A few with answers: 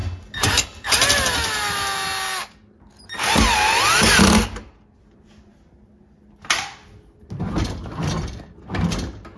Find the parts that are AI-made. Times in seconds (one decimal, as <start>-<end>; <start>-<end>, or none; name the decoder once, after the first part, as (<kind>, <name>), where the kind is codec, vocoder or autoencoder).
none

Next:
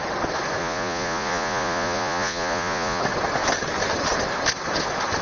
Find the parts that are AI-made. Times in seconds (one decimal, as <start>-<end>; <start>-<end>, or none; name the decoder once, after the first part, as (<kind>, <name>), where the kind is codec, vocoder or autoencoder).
0.6-3.0 (vocoder, Vocos)

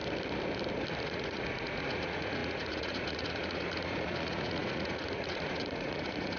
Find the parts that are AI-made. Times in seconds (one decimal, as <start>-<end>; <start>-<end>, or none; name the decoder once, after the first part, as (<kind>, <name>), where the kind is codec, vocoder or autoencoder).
1.0-6.4 (vocoder, Vocos)

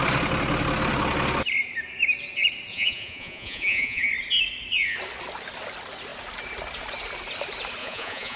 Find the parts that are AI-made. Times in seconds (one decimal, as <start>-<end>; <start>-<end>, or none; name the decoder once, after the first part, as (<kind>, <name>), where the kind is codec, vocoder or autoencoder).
2.7-4.1 (vocoder, Vocos); 7.8-8.4